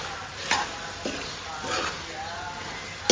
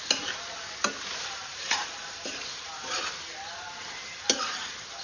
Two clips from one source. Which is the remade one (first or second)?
second